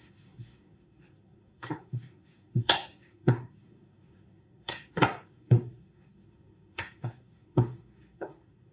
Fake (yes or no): yes